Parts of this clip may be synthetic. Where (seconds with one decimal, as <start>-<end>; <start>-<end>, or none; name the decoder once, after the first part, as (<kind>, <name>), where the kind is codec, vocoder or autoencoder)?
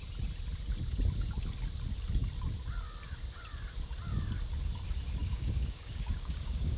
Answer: 5.2-6.8 (codec, DAC)